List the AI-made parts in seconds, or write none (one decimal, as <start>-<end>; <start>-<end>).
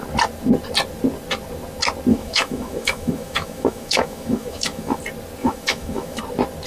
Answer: 2.1-5.0; 5.4-6.2